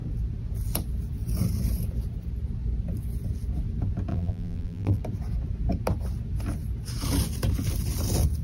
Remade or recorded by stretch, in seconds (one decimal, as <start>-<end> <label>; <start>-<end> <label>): 0.0-4.1 recorded; 4.1-5.0 remade; 5.0-8.4 recorded